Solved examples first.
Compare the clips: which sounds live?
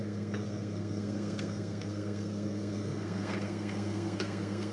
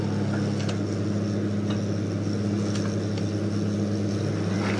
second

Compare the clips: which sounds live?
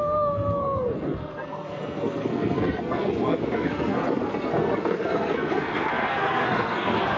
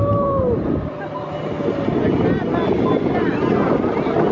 second